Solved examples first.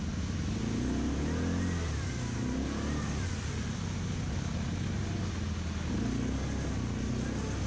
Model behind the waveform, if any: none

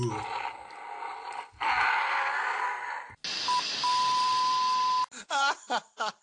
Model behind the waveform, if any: none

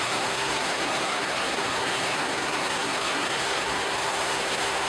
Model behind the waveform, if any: codec, SNAC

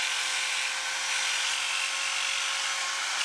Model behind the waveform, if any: none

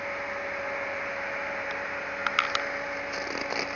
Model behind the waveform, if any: none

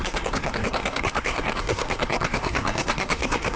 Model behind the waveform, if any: codec, SNAC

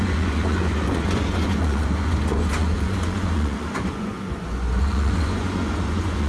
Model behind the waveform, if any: vocoder, Vocos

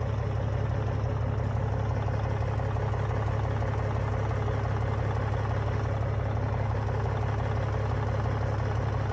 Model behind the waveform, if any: none